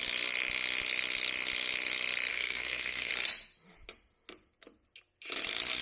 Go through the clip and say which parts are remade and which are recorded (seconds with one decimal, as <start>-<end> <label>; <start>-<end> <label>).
0.0-2.3 recorded; 2.3-3.1 remade; 3.1-5.8 recorded